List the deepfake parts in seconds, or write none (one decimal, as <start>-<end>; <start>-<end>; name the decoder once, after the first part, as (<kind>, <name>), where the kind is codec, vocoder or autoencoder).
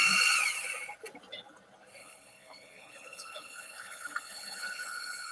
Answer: 2.0-5.3 (codec, HILCodec)